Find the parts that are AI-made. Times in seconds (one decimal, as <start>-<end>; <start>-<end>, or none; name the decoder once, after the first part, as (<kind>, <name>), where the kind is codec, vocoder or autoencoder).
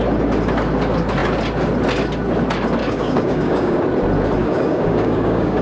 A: 2.8-3.8 (codec, DAC); 4.4-5.6